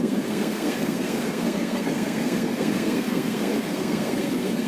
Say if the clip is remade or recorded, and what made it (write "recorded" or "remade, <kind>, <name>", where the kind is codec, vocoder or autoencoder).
remade, codec, SNAC